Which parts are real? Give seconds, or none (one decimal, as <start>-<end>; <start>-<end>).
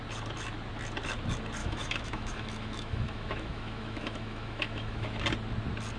0.0-1.6; 5.2-6.0